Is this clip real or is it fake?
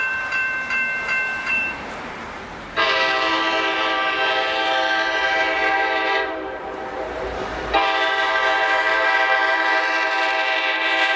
fake